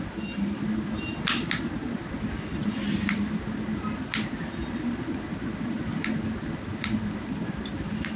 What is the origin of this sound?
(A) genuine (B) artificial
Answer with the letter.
A